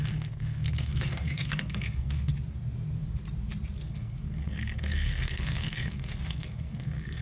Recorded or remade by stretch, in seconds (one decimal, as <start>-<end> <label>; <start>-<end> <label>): 0.0-2.3 remade; 2.3-3.8 recorded; 3.8-7.2 remade